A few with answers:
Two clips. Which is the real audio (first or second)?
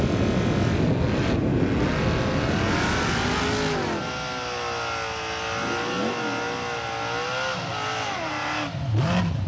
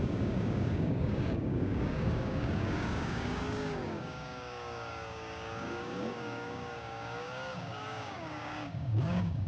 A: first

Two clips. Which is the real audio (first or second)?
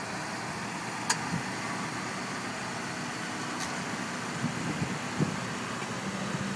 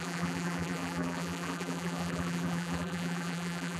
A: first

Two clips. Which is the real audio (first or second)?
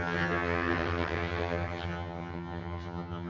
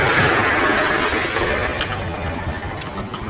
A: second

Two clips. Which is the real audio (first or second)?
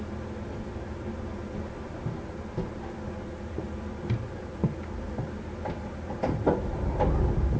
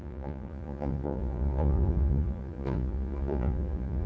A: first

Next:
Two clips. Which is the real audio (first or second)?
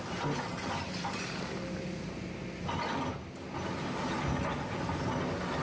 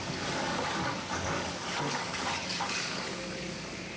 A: first